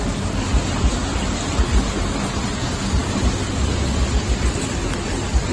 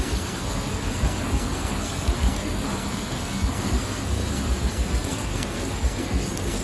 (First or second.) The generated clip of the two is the second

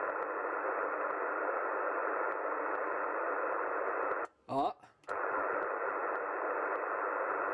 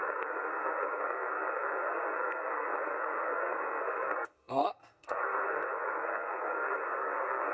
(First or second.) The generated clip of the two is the second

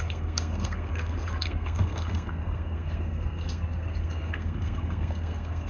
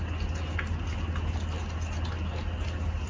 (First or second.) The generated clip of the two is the first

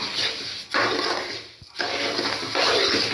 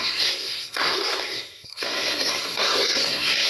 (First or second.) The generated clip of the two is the second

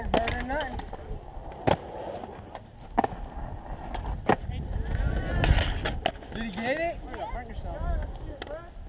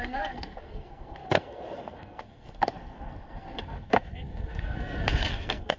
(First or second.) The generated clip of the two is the second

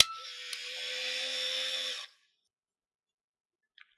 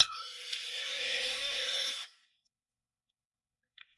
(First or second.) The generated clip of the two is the second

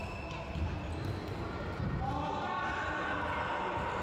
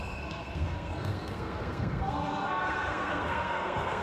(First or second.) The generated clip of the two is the second